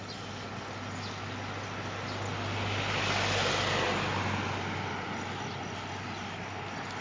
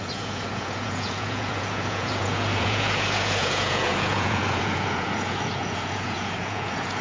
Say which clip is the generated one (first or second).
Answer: second